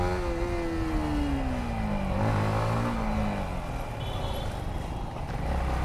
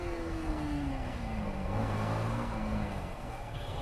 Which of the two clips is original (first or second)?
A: first